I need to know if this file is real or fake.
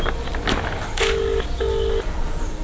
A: real